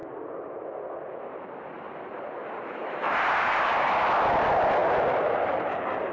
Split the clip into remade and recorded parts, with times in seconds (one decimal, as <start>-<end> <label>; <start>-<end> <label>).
0.0-2.4 recorded; 2.4-3.9 remade; 3.9-6.1 recorded

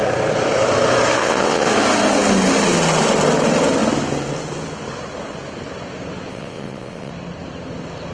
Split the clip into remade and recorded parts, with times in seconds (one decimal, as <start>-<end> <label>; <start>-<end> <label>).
0.0-1.2 recorded; 1.2-1.7 remade; 1.7-6.3 recorded; 6.3-7.1 remade; 7.1-8.1 recorded